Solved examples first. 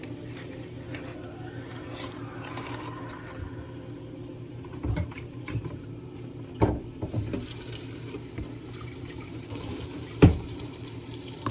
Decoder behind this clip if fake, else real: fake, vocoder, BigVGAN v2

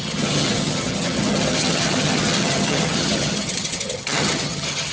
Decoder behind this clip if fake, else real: fake, vocoder, HiFi-GAN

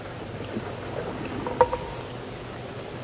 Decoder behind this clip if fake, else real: real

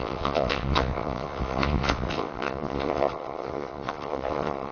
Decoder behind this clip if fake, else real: fake, vocoder, WaveNeXt